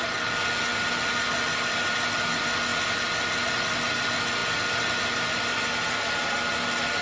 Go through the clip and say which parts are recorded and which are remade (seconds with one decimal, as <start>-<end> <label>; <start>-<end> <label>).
0.0-7.0 recorded